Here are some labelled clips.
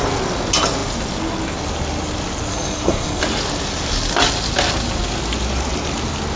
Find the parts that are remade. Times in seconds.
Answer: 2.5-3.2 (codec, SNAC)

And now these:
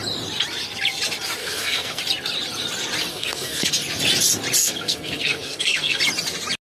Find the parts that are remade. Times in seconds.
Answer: 1.4-2.0 (codec, SNAC); 3.1-3.7; 4.6-6.0

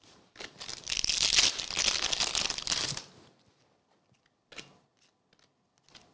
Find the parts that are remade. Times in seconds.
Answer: none

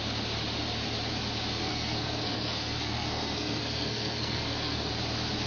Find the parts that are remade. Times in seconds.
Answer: 1.6-4.9 (codec, SNAC)

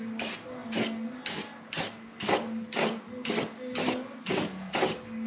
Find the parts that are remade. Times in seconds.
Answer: none